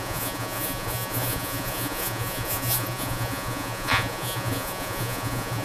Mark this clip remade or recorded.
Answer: remade